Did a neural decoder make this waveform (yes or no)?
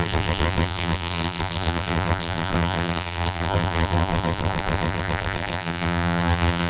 yes